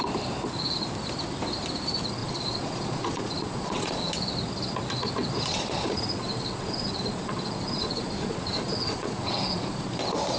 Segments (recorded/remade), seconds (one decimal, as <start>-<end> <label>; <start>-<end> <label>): 0.0-2.2 recorded; 2.2-4.1 remade; 4.1-5.5 recorded; 5.5-9.9 remade; 9.9-10.4 recorded